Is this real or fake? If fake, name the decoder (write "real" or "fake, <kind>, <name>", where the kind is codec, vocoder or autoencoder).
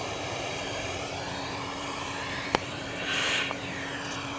fake, vocoder, BigVGAN v2